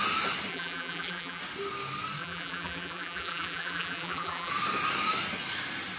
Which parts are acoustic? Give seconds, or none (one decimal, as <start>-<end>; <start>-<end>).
0.0-0.5; 1.4-2.2; 4.5-6.0